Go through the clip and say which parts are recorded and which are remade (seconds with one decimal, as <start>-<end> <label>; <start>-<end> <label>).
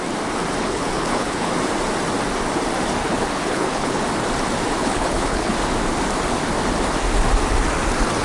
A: 0.0-0.6 recorded; 0.6-1.5 remade; 1.5-3.0 recorded; 3.0-4.0 remade; 4.0-4.8 recorded; 4.8-5.5 remade; 5.5-8.2 recorded